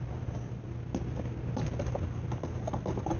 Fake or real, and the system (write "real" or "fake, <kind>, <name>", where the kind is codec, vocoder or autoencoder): real